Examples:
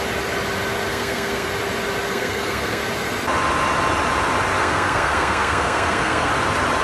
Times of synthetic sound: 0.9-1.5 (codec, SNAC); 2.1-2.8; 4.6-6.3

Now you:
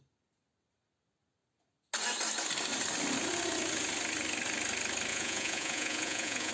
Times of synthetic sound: 5.1-6.5 (vocoder, Vocos)

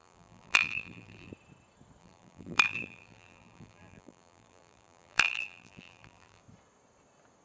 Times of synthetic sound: 0.0-1.3 (vocoder, BigVGAN v2); 2.0-6.4